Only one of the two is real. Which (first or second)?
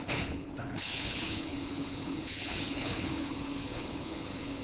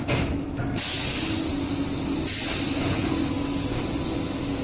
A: second